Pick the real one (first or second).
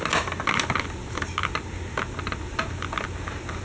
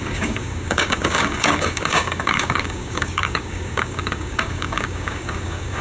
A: first